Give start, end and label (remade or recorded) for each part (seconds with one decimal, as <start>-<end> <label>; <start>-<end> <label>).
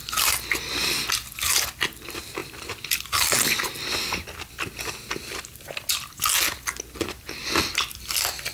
0.0-8.5 recorded